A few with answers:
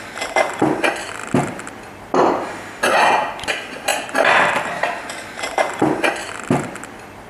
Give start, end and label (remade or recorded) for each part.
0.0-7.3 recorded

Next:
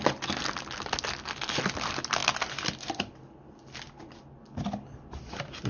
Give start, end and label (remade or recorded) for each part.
0.0-5.7 recorded

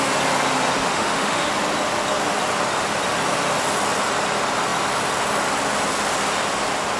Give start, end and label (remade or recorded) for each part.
0.0-0.9 recorded; 0.9-1.5 remade; 1.5-7.0 recorded

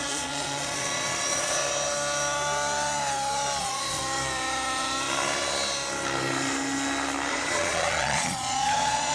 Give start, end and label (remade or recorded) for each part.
0.0-1.6 remade; 1.6-3.6 recorded; 3.6-4.0 remade; 4.0-7.3 recorded; 7.3-9.1 remade

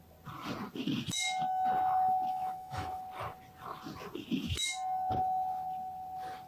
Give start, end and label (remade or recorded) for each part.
0.0-2.3 recorded; 2.3-3.0 remade; 3.0-6.5 recorded

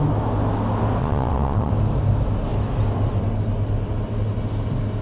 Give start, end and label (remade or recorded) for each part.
0.0-1.0 recorded; 1.0-1.7 remade; 1.7-5.0 recorded

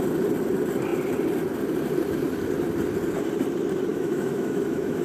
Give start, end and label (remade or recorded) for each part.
0.0-3.9 recorded; 3.9-5.0 remade

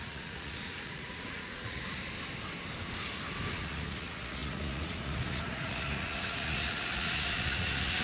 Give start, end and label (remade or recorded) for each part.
0.0-2.0 remade; 2.0-3.5 recorded; 3.5-8.0 remade